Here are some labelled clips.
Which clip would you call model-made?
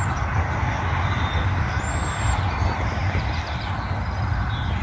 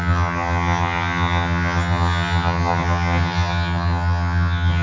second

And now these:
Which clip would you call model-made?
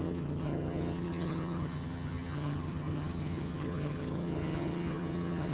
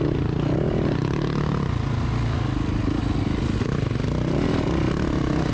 first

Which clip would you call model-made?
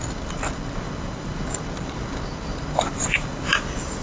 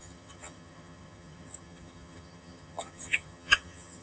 second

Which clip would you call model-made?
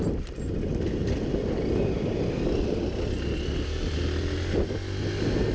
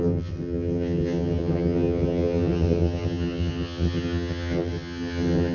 second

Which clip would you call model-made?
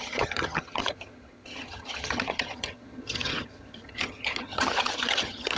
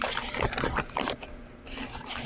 first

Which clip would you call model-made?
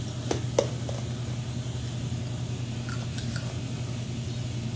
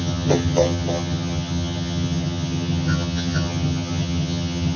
second